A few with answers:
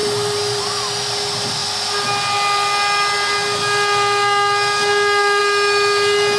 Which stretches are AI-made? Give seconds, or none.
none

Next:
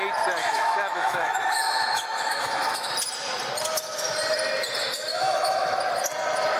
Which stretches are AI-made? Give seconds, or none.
0.4-2.9 (autoencoder, DAC-VAE); 5.1-5.8